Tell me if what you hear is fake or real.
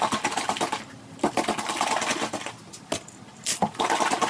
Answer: real